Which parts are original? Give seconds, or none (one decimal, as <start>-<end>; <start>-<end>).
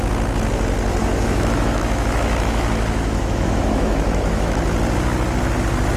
0.0-1.0; 4.6-6.0